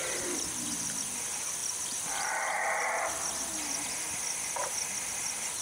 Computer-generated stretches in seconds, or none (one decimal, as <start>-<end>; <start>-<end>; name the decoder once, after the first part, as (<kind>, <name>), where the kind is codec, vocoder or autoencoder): 0.0-1.0 (vocoder, BigVGAN v2); 1.6-3.3